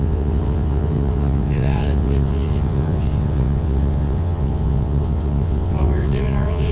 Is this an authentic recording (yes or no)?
no